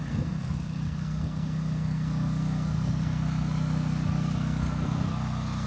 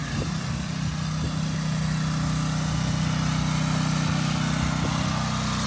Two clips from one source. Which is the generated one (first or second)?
first